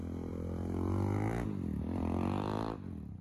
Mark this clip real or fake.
real